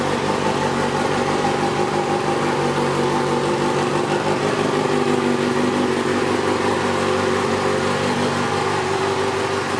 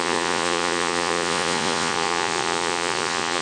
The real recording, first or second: first